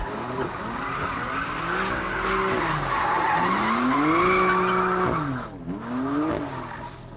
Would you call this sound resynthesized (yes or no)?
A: no